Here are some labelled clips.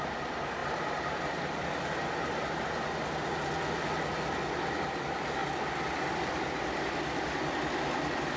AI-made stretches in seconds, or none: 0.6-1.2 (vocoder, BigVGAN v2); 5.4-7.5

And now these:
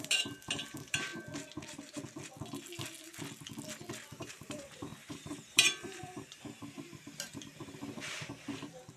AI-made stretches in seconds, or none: 0.0-1.1 (vocoder, BigVGAN v2); 4.3-9.0

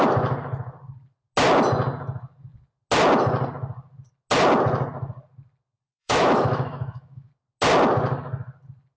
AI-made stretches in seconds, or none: 6.0-7.3 (autoencoder, DAC-VAE)